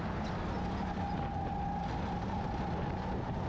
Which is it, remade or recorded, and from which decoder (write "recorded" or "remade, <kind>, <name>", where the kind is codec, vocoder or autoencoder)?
recorded